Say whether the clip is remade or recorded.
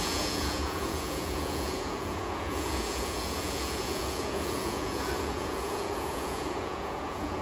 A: remade